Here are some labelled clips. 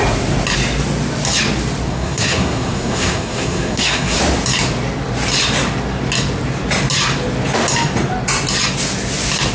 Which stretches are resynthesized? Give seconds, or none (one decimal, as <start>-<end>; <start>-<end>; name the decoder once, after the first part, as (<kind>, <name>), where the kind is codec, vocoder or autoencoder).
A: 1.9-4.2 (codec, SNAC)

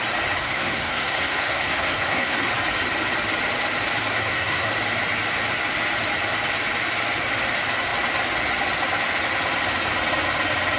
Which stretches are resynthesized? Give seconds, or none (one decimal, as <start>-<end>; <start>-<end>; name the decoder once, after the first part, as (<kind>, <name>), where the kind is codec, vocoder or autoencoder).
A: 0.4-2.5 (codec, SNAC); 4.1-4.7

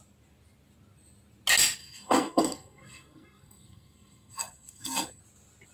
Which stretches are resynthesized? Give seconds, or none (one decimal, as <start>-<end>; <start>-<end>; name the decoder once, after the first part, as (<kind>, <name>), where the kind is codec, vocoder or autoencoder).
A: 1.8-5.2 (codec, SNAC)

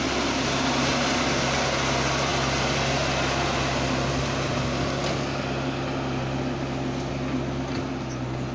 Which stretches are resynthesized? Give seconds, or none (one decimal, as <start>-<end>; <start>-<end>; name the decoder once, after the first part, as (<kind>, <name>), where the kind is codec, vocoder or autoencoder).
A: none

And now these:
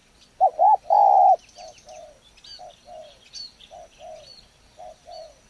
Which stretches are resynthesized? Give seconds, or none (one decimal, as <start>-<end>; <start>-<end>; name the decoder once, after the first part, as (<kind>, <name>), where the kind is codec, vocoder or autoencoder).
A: none

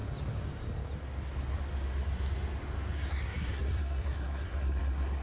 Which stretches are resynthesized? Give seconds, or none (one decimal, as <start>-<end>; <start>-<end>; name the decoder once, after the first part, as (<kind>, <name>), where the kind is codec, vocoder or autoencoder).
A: 3.1-5.2 (codec, SNAC)

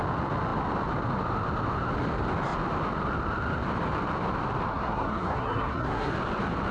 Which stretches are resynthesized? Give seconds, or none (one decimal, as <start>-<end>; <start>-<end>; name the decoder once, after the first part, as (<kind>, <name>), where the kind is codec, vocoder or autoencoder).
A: 4.7-6.1 (codec, SNAC)

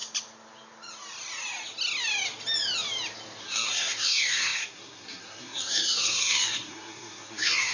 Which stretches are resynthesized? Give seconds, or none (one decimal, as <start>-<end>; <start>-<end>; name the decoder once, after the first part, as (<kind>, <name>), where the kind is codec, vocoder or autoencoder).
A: 3.4-7.7 (codec, SNAC)